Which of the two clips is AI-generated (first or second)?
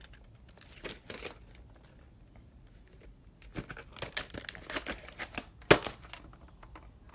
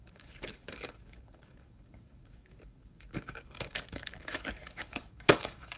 second